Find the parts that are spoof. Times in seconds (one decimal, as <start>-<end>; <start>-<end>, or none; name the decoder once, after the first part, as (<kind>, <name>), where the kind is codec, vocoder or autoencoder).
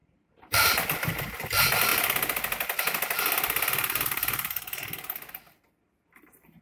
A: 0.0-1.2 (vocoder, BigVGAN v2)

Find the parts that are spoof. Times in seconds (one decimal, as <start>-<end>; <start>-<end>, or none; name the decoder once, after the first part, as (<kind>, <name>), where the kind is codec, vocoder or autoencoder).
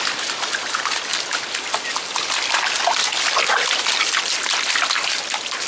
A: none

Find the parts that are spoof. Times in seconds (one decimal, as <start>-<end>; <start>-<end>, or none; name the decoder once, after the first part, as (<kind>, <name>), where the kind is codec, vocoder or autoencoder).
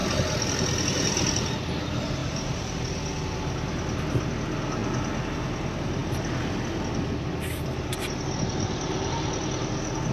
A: 2.2-2.8 (vocoder, BigVGAN v2)